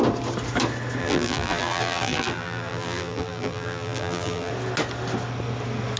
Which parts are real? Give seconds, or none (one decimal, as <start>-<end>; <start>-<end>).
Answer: 0.0-1.0; 4.5-6.0